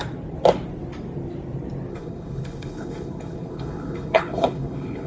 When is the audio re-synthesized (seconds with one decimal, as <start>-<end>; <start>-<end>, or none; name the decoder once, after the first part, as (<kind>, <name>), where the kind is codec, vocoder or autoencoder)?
1.9-5.1 (codec, HILCodec)